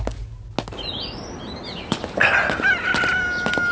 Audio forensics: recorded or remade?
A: recorded